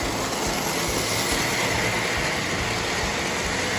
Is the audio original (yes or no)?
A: yes